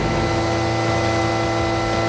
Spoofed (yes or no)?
no